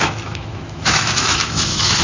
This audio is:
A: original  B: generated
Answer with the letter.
B